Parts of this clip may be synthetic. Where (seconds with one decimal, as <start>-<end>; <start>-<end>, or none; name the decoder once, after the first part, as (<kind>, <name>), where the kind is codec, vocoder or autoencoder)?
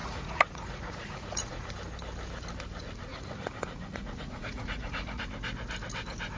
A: 0.0-1.7 (vocoder, Vocos); 3.1-5.2